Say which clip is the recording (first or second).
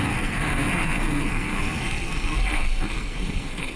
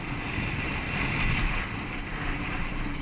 second